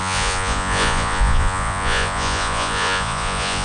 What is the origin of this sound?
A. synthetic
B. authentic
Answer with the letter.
A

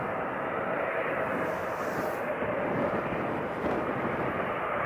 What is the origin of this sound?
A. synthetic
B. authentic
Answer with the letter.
B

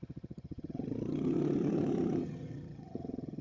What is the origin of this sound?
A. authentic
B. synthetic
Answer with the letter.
B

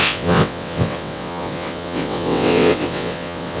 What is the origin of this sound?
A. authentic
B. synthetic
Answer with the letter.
B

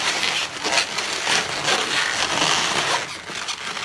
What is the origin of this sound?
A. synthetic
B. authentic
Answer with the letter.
B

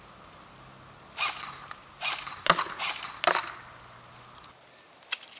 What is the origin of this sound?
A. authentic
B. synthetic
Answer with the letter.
A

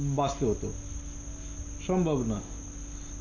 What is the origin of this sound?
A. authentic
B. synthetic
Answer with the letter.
A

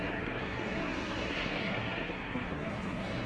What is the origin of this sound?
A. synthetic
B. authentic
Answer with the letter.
A